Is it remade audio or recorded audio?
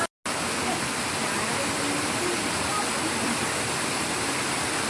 recorded